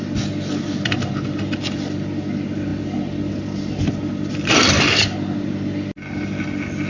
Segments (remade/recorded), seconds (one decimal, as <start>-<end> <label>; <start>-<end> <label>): 0.0-6.9 recorded